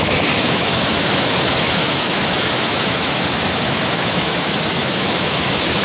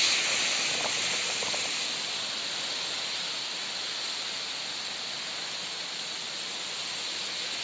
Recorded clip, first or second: second